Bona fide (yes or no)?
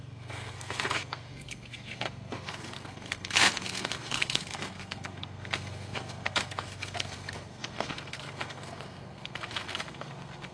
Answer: no